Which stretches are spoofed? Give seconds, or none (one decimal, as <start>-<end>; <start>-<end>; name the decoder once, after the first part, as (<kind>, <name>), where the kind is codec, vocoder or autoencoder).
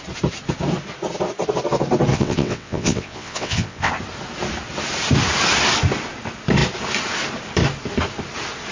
2.1-3.9 (vocoder, WaveNeXt)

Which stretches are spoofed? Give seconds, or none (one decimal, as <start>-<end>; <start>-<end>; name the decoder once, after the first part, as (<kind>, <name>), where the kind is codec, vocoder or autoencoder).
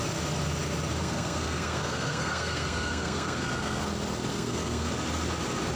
1.0-3.8 (codec, SNAC); 4.3-4.9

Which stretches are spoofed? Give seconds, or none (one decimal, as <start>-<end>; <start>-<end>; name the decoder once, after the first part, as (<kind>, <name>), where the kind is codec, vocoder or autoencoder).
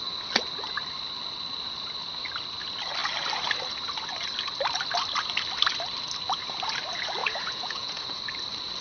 7.2-8.2 (vocoder, Vocos)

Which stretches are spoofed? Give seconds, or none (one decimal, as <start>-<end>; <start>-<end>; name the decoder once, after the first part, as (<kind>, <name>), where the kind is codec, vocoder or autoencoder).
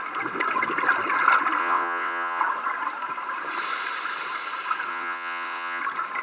1.6-2.4 (vocoder, WaveNeXt); 4.9-5.8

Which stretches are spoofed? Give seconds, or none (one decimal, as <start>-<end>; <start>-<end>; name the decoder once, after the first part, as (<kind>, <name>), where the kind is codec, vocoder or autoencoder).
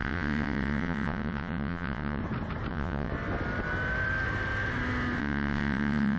0.0-2.2 (vocoder, WaveNeXt); 2.7-3.1; 5.2-6.2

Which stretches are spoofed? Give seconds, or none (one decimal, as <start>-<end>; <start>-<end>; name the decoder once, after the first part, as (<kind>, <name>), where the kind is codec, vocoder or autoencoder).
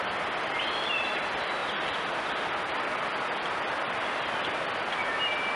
none